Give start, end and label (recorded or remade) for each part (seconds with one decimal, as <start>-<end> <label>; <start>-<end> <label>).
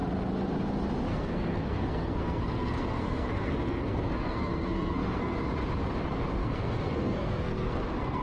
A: 0.0-1.1 recorded; 1.1-5.4 remade; 5.4-6.4 recorded; 6.4-8.2 remade